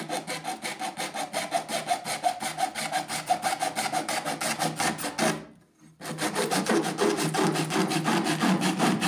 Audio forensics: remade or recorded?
recorded